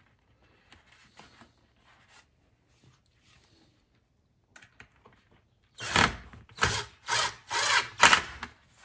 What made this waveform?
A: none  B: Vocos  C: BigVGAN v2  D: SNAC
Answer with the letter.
A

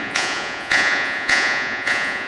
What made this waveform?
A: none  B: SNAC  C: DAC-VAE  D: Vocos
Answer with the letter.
D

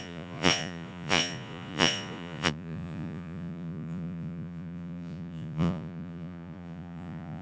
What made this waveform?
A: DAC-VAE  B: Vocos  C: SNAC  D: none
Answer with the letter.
B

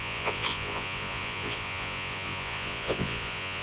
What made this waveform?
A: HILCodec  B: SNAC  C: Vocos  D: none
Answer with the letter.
C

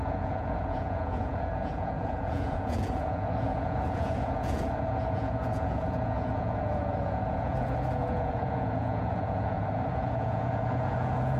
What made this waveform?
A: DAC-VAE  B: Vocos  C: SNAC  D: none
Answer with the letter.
B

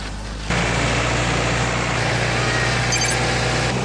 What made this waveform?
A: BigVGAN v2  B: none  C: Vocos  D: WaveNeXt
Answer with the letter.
B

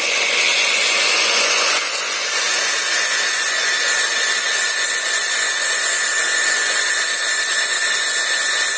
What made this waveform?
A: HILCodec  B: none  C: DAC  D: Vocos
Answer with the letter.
D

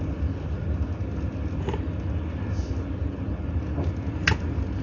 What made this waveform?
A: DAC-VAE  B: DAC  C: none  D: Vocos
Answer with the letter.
C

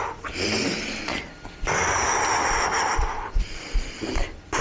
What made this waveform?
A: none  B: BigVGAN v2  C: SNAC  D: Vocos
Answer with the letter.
A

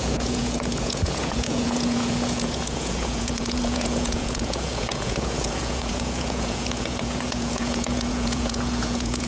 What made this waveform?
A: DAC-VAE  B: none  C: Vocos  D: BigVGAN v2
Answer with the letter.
C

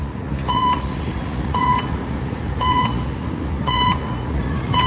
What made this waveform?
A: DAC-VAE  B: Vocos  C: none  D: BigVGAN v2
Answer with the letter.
B